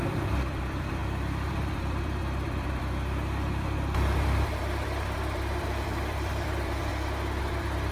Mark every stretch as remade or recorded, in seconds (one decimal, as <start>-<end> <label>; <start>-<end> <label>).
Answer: 0.0-1.0 remade; 1.0-1.5 recorded; 1.5-6.9 remade; 6.9-7.4 recorded; 7.4-7.9 remade